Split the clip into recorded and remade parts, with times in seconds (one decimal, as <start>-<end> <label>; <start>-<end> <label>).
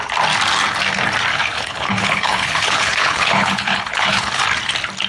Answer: 0.0-1.3 recorded; 1.3-4.4 remade; 4.4-5.1 recorded